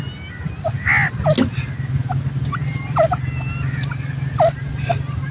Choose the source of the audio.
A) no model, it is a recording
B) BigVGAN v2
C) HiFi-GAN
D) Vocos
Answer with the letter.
A